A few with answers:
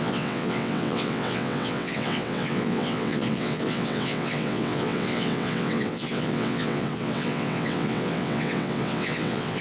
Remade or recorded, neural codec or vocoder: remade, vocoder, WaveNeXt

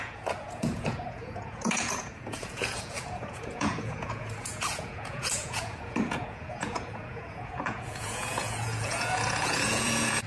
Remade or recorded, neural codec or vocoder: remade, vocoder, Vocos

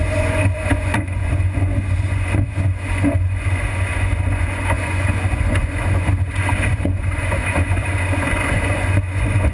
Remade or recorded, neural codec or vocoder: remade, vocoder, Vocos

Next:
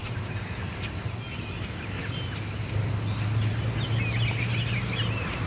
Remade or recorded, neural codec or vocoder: recorded